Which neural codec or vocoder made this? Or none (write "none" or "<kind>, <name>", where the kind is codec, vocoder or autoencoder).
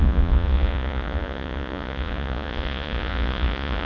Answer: vocoder, Vocos